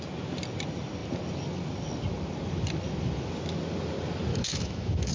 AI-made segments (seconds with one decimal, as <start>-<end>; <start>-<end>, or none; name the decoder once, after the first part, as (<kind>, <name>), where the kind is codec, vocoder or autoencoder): 4.3-5.1 (autoencoder, DAC-VAE)